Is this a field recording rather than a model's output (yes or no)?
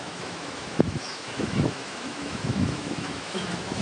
no